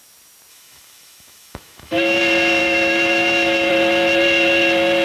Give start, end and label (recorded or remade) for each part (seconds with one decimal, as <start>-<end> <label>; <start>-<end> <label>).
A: 0.0-0.5 recorded; 0.5-2.2 remade; 2.2-2.6 recorded; 2.6-3.7 remade; 3.7-5.0 recorded